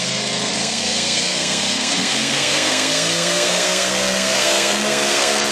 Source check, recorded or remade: remade